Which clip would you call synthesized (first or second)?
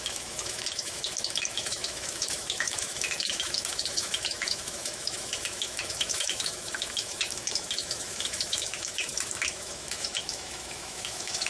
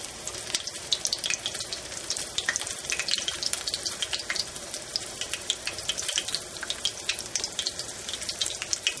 first